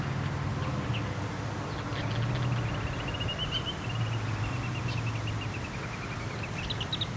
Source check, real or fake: real